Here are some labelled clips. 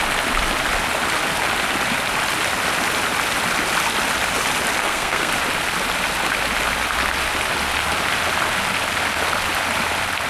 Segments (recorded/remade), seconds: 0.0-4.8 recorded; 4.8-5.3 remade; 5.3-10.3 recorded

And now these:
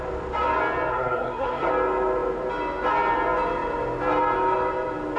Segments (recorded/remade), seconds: 0.0-0.9 recorded; 0.9-1.7 remade; 1.7-5.2 recorded